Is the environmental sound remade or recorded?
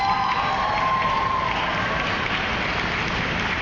recorded